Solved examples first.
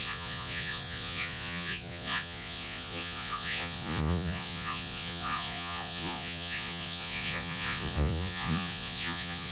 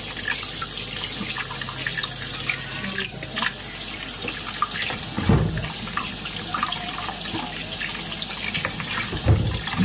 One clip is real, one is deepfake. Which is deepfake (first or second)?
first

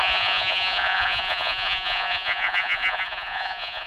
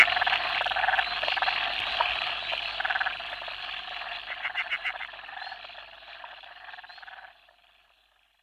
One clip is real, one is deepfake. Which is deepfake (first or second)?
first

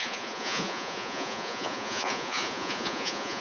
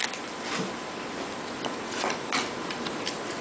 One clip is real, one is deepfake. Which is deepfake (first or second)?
first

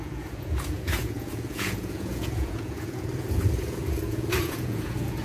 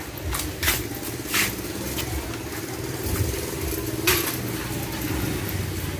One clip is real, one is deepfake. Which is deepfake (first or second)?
first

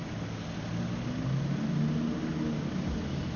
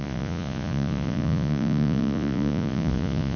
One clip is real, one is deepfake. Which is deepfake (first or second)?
second